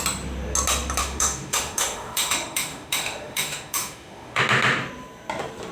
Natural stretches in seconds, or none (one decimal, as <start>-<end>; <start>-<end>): 0.0-1.0; 4.4-5.7